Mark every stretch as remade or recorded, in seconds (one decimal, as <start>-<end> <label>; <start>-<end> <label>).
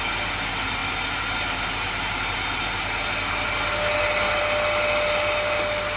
0.0-6.0 recorded